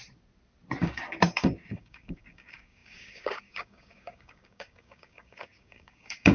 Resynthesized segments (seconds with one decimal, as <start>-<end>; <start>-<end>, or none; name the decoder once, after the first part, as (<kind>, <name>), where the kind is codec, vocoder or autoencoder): 0.8-6.3 (codec, DAC)